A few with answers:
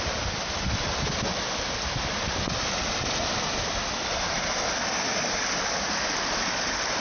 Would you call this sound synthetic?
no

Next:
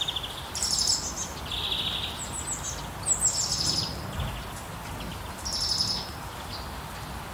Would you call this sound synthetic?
no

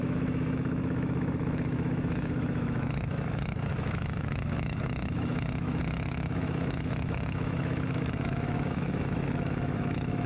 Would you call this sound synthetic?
yes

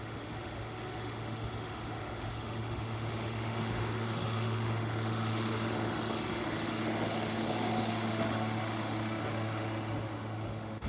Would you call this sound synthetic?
yes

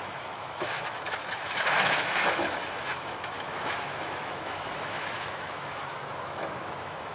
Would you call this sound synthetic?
yes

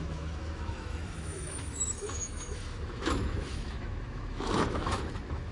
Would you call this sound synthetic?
yes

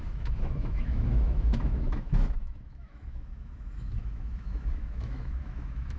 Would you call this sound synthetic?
yes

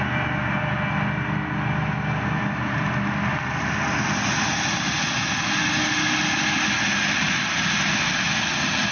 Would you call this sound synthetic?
no